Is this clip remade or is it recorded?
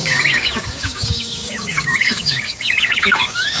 remade